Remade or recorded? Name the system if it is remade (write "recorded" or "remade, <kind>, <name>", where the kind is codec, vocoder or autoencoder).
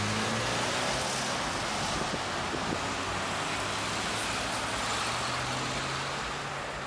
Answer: recorded